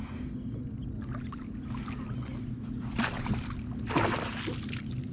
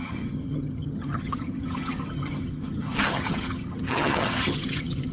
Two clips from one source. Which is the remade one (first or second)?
second